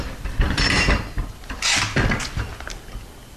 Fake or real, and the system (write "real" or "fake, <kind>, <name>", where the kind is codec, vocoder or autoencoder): real